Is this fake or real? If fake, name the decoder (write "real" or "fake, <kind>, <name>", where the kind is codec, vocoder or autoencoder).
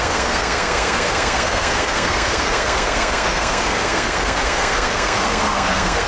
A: fake, codec, SNAC